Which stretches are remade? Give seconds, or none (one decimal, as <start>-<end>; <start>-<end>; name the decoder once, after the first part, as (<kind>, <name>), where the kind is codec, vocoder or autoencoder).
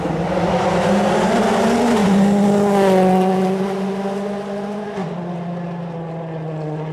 none